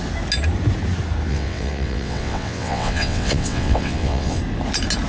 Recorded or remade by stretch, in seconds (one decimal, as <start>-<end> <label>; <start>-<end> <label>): 0.0-1.3 recorded; 1.3-4.4 remade; 4.4-5.1 recorded